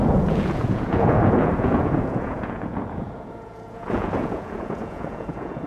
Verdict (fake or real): fake